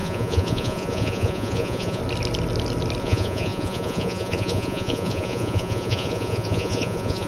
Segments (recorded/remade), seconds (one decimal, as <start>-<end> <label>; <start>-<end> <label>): 0.0-2.0 remade; 2.0-3.0 recorded; 3.0-7.3 remade